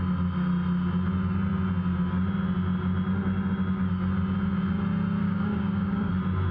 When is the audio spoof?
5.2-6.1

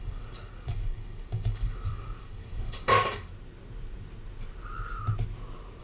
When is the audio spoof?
0.0-3.3

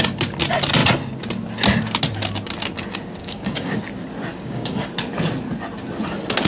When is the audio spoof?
3.2-3.8; 4.3-4.9

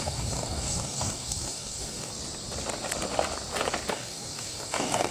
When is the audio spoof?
0.0-2.1; 3.9-5.1

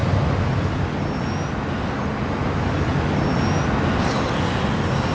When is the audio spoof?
none

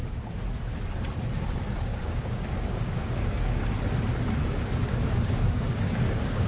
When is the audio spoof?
2.0-3.6; 4.8-6.5

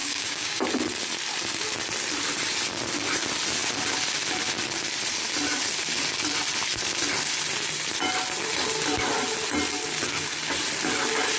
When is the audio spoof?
0.0-0.6